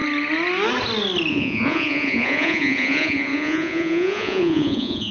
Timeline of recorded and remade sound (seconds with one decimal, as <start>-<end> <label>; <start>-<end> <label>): 0.0-1.3 recorded; 1.3-5.1 remade